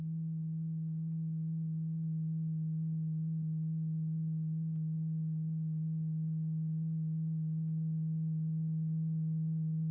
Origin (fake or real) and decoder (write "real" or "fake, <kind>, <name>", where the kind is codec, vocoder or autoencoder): real